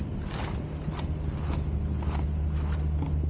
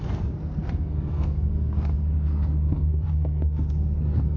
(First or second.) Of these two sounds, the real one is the first